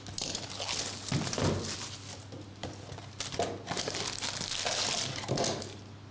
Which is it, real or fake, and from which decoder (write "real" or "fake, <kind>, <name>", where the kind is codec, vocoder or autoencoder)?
real